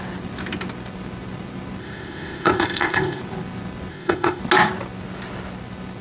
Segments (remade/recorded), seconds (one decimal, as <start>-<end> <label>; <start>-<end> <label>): 0.0-1.8 recorded; 1.8-3.2 remade; 3.2-3.9 recorded; 3.9-4.4 remade; 4.4-6.0 recorded